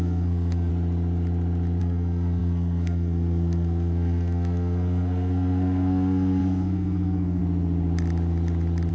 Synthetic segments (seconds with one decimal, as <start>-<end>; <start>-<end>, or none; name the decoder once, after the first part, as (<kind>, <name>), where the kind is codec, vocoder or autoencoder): 0.0-0.7 (codec, SNAC); 1.8-7.4